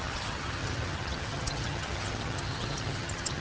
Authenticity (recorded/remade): remade